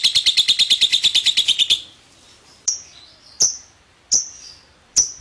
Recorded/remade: remade